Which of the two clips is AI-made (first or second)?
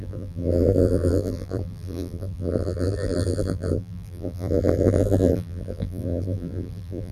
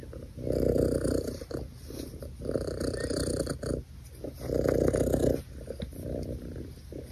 first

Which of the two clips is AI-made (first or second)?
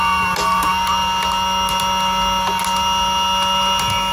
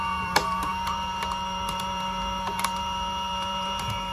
second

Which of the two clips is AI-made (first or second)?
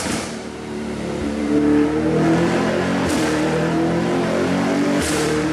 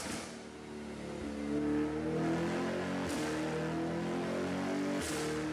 first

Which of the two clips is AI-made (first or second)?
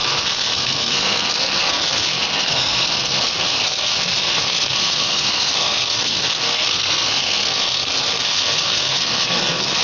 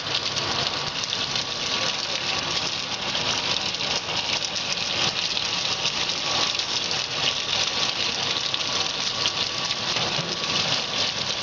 first